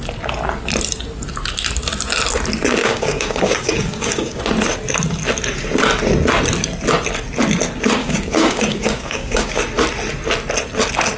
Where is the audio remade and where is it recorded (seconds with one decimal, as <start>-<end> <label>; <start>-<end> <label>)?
0.0-2.8 recorded; 2.8-4.4 remade; 4.4-8.0 recorded; 8.0-9.6 remade; 9.6-11.2 recorded